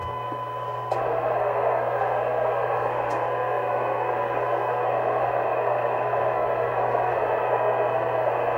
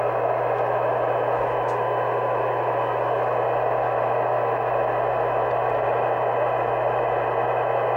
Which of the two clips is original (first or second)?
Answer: second